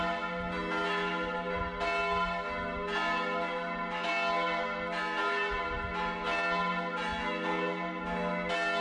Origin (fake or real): real